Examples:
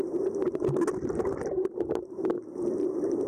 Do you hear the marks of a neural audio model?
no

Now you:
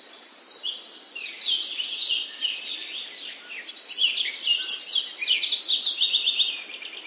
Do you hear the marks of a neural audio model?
no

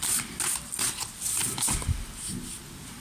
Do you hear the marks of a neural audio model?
no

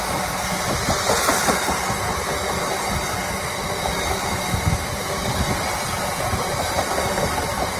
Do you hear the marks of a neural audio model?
no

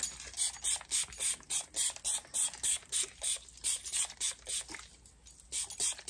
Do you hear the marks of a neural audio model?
no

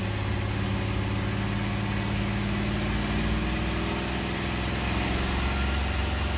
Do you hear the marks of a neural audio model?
no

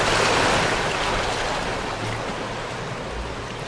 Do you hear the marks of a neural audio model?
no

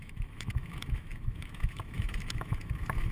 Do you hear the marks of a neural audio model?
yes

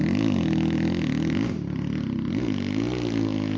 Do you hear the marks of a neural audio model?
no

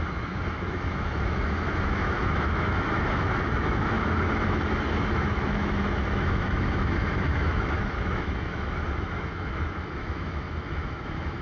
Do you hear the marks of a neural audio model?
yes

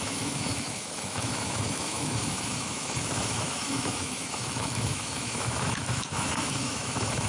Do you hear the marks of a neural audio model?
yes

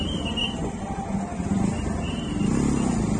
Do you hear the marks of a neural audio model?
no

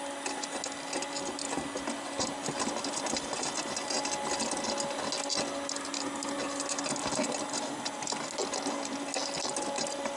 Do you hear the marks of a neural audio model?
no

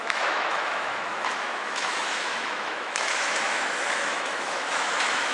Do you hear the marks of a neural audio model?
yes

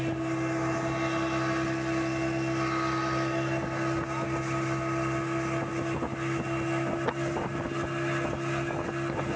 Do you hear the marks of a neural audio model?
no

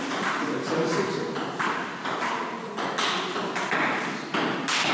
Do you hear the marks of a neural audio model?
no